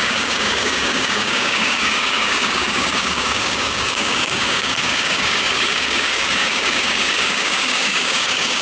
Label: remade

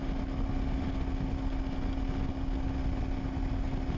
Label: recorded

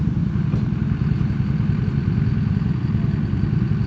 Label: recorded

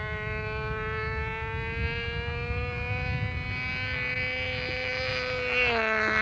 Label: recorded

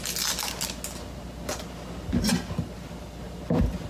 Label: recorded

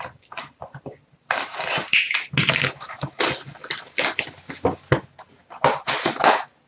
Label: recorded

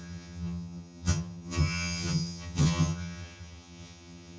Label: remade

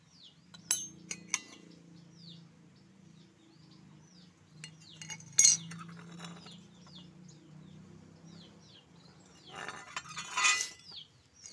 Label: recorded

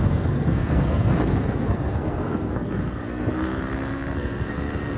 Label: remade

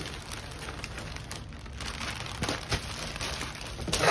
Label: recorded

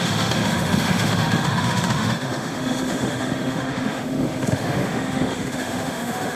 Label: remade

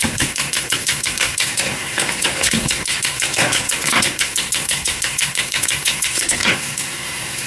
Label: remade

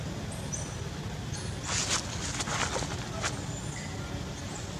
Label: recorded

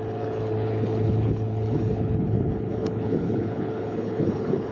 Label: remade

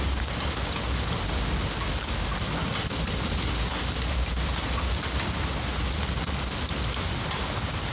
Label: recorded